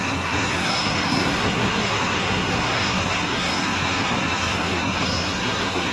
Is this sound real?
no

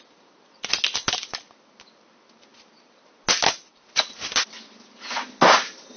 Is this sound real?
yes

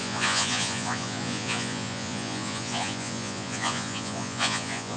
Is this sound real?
no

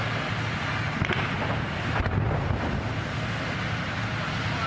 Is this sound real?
yes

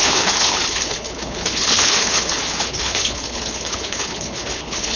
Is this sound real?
no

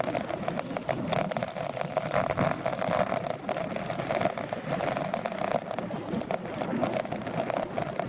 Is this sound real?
yes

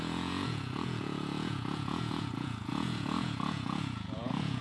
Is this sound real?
no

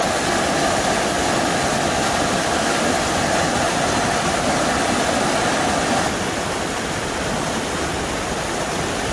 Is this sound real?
yes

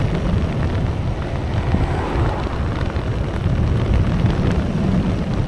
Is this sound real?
yes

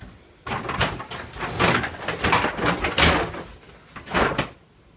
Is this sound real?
yes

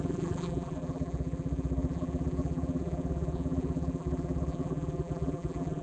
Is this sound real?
no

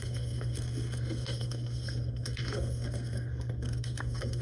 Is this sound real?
no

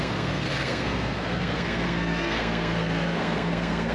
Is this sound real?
no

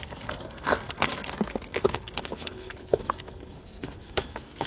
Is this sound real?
no